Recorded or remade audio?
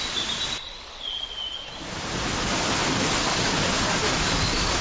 recorded